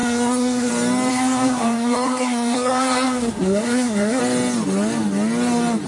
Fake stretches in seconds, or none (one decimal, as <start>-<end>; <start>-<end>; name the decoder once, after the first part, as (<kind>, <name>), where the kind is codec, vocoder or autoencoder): 0.0-0.7 (codec, SNAC); 1.1-4.2